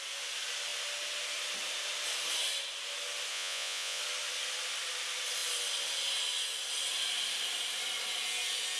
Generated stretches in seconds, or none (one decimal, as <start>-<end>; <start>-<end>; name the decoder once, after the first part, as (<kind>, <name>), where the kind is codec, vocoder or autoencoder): 3.3-4.0 (vocoder, Vocos)